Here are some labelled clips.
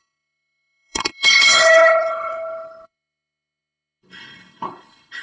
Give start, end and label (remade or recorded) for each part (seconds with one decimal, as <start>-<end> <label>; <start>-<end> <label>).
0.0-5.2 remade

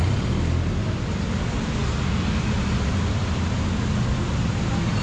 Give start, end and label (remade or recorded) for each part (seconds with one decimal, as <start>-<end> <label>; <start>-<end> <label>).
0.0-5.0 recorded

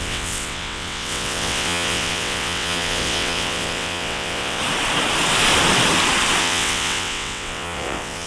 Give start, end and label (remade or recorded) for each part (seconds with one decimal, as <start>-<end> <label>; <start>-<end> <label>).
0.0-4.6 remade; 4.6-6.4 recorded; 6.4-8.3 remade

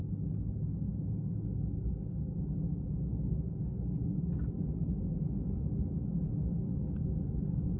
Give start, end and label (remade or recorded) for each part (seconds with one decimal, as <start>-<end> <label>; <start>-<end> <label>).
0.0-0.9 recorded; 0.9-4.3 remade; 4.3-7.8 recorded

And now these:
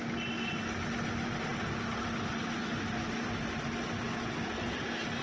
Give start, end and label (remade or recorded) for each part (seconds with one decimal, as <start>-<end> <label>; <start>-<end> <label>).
0.0-5.2 recorded

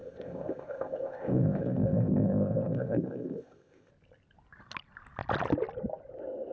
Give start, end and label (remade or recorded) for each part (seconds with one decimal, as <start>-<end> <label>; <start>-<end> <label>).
0.0-3.9 remade; 3.9-6.5 recorded

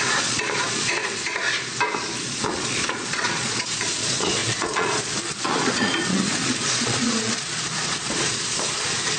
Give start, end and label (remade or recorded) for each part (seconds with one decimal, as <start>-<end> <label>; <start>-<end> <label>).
0.0-1.4 remade; 1.4-2.2 recorded; 2.2-9.2 remade

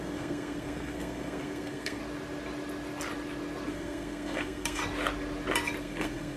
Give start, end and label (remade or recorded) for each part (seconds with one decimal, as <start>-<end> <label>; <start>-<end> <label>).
0.0-2.0 remade; 2.0-3.7 recorded; 3.7-4.8 remade; 4.8-5.8 recorded; 5.8-6.4 remade